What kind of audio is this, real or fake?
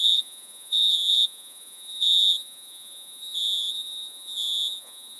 fake